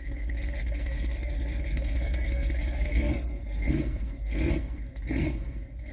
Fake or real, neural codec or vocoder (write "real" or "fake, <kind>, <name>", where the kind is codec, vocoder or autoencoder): fake, codec, SNAC